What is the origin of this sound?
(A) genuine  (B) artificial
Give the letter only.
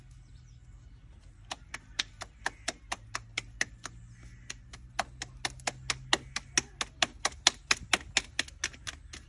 A